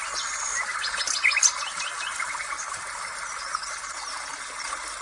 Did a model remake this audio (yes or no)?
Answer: no